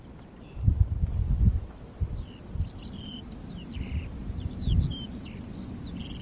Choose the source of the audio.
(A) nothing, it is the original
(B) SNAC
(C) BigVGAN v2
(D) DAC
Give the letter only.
A